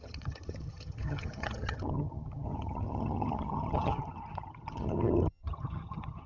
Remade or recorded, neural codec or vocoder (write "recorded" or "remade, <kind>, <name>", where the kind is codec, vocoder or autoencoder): remade, vocoder, HiFi-GAN